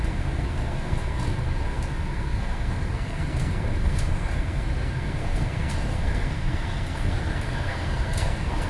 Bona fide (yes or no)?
no